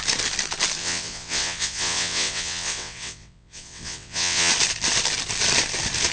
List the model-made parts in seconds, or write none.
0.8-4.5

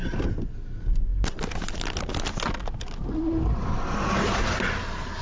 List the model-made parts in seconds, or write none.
none

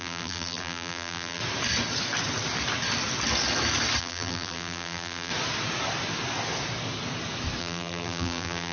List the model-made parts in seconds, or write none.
0.0-1.4; 4.0-5.3; 7.6-8.7